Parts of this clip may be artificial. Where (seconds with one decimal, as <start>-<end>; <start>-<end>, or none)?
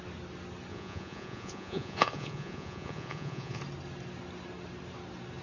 0.7-3.6